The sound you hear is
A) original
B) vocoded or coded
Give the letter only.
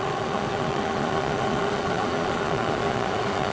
B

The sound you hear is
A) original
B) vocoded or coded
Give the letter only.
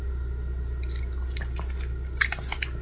A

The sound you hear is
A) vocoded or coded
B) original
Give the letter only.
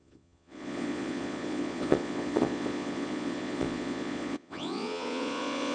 A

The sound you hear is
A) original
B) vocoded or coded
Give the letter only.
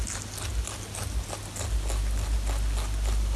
A